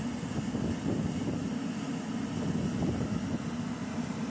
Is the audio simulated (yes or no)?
no